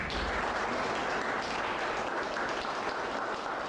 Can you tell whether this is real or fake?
real